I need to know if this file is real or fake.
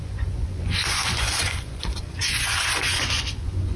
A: fake